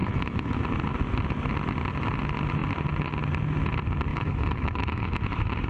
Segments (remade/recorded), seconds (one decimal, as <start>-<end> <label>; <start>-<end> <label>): 0.0-0.6 remade; 0.6-4.1 recorded; 4.1-5.2 remade; 5.2-5.7 recorded